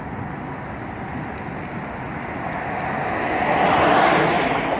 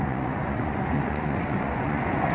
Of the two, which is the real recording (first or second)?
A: first